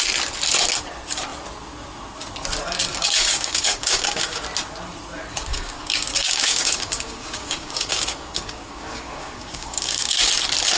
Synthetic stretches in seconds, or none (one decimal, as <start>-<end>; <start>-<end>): 2.9-4.4; 5.5-10.3